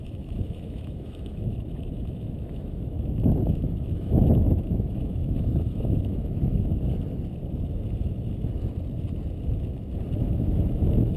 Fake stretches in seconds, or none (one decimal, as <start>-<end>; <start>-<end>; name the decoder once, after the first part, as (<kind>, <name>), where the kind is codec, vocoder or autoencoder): 0.0-6.7 (autoencoder, DAC-VAE); 10.2-11.2

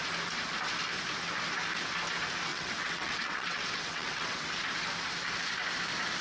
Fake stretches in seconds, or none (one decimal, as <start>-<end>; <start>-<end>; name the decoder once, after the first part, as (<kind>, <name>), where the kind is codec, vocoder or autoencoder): 2.5-4.5 (vocoder, WaveNeXt)

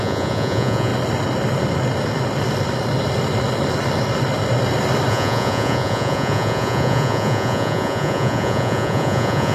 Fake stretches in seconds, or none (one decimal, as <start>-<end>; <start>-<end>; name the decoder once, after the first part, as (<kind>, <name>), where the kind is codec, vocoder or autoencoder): 0.0-0.9 (vocoder, Vocos); 5.1-9.5

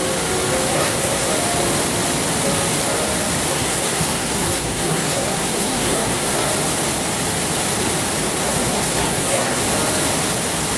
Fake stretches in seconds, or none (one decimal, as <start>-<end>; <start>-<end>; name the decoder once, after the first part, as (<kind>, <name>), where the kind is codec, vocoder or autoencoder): 0.7-1.3 (codec, SNAC); 3.5-6.5; 8.4-9.6

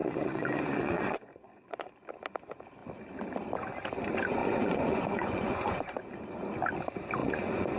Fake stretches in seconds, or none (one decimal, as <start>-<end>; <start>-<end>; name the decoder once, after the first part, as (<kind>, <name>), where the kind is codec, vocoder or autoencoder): 0.0-1.9 (vocoder, Vocos); 4.4-6.2; 7.2-7.8

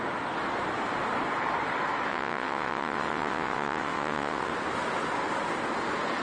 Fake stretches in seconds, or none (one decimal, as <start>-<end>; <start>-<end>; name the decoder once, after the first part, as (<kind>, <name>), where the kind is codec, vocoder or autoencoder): 2.1-4.5 (vocoder, WaveNeXt)